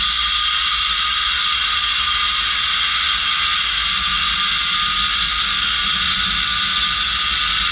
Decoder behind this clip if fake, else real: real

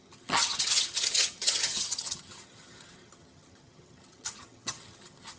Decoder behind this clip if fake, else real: fake, vocoder, HiFi-GAN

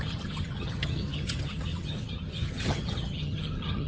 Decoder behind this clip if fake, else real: fake, vocoder, HiFi-GAN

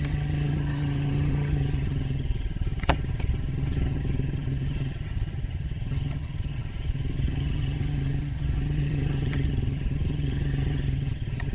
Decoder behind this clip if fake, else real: fake, vocoder, HiFi-GAN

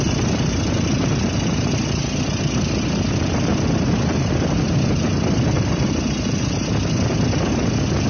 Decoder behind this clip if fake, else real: real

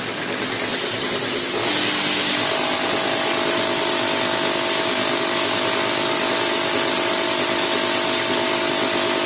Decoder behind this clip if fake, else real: real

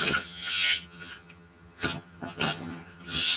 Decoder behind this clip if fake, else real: fake, vocoder, HiFi-GAN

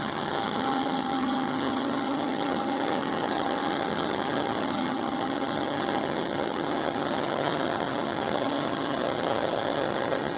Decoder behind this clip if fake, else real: fake, vocoder, HiFi-GAN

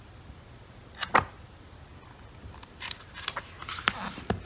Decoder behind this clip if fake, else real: real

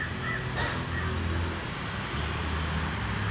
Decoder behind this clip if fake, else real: real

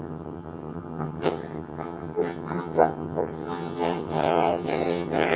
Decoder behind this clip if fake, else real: fake, vocoder, HiFi-GAN